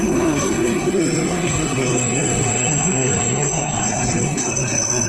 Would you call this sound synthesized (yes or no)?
yes